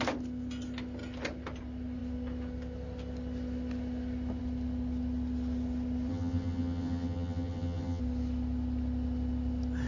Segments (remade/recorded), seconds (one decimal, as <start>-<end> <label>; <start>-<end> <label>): 0.0-6.1 recorded; 6.1-8.0 remade; 8.0-9.9 recorded